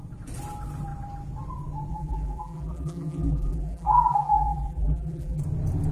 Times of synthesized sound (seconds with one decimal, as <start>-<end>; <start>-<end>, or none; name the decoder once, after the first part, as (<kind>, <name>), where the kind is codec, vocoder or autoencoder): 1.9-5.4 (vocoder, BigVGAN v2)